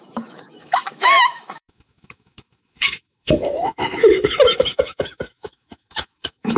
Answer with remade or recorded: remade